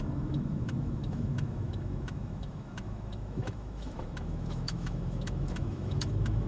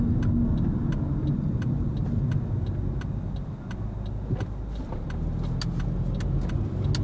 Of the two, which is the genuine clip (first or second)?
second